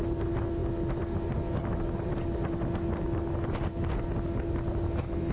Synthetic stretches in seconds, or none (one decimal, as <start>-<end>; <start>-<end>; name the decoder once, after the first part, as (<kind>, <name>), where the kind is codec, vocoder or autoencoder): none